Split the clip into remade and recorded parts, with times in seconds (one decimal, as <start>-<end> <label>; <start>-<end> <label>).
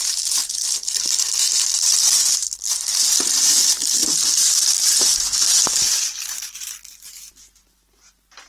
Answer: 0.0-0.4 recorded; 0.4-1.0 remade; 1.0-8.5 recorded